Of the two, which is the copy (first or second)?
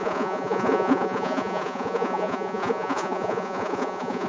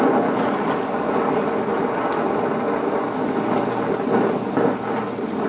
first